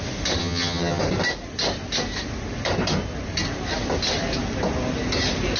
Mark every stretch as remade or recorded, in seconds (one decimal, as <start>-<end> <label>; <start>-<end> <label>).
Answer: 0.0-0.4 recorded; 0.4-1.0 remade; 1.0-5.6 recorded

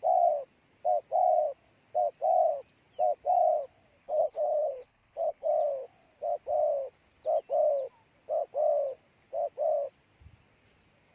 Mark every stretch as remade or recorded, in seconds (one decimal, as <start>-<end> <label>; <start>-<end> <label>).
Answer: 0.0-4.0 recorded; 4.0-5.5 remade; 5.5-11.1 recorded

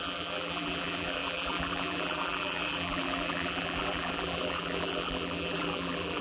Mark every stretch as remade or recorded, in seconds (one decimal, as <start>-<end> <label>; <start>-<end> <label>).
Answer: 0.0-6.2 remade

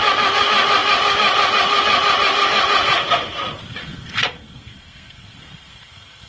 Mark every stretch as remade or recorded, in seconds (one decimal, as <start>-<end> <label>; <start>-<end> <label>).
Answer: 0.0-3.8 recorded; 3.8-6.3 remade

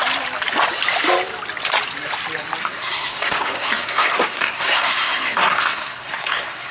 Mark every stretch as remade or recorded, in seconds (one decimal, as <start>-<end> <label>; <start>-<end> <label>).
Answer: 0.0-2.6 recorded; 2.6-6.7 remade

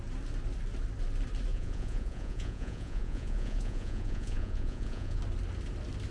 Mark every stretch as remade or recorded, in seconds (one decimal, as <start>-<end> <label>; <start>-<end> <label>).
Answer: 0.0-1.5 recorded; 1.5-5.2 remade; 5.2-6.1 recorded

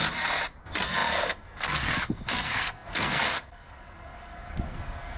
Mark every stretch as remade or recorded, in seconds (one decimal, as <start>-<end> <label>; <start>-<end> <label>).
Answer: 0.0-0.6 recorded; 0.6-5.2 remade

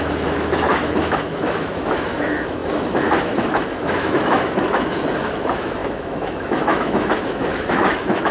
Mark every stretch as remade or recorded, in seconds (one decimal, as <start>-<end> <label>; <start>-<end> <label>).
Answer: 0.0-8.3 remade